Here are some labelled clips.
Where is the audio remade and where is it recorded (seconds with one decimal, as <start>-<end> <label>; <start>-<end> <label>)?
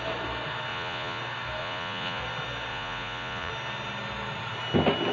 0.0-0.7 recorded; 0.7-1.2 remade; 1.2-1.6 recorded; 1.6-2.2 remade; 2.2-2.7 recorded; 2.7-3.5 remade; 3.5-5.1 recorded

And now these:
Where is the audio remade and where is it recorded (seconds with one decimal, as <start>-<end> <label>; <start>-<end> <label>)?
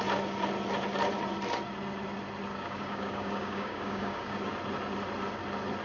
0.0-2.5 recorded; 2.5-4.5 remade; 4.5-5.8 recorded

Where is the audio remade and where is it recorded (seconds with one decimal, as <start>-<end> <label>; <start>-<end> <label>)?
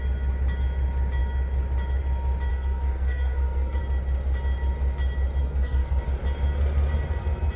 0.0-2.5 recorded; 2.5-3.8 remade; 3.8-5.4 recorded; 5.4-6.0 remade; 6.0-7.6 recorded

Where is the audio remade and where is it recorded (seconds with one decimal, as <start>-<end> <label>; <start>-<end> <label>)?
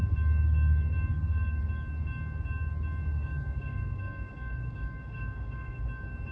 0.0-1.1 recorded; 1.1-1.6 remade; 1.6-3.1 recorded; 3.1-5.8 remade; 5.8-6.3 recorded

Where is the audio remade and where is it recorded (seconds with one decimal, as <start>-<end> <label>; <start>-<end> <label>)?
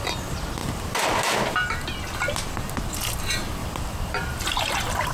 0.0-0.6 recorded; 0.6-1.9 remade; 1.9-3.6 recorded; 3.6-5.1 remade